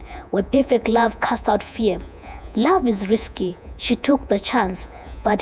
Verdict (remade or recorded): remade